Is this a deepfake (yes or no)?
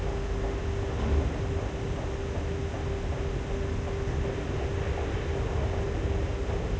no